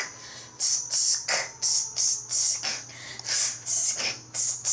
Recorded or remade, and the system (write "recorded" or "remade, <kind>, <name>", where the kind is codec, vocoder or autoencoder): recorded